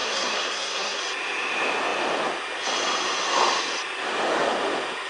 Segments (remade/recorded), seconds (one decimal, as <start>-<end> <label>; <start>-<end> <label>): 0.0-1.0 remade; 1.0-5.1 recorded